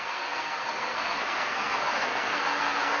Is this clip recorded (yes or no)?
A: no